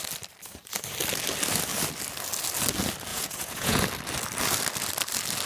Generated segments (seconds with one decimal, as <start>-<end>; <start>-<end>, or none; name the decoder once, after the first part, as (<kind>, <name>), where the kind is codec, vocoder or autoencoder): 3.1-3.8 (vocoder, Vocos)